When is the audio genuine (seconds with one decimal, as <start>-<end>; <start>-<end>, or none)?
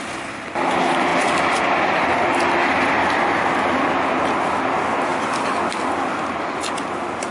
0.0-7.3